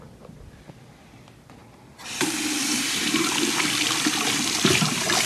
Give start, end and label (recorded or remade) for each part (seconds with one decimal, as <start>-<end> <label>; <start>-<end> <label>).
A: 0.0-5.3 remade